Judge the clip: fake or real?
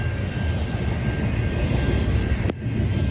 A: real